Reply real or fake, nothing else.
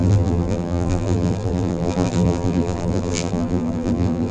fake